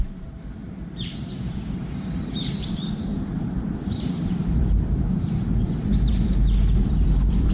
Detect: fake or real fake